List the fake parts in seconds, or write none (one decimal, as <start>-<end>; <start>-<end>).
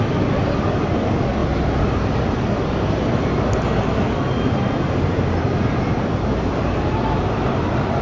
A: none